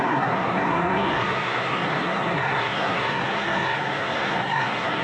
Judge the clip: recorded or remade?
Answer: remade